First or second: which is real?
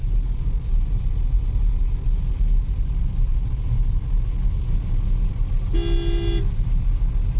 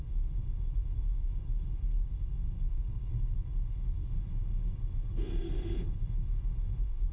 first